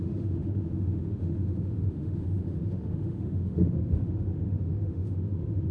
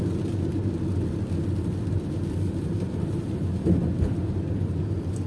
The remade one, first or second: first